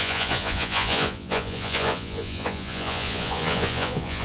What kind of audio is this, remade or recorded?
remade